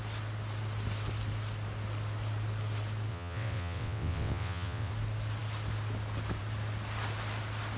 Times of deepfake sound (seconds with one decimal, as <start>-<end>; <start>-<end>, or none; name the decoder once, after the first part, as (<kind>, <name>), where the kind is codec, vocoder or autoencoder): 3.1-4.9 (vocoder, WaveNeXt)